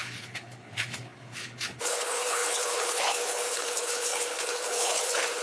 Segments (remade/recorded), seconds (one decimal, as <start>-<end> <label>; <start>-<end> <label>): 0.0-5.4 remade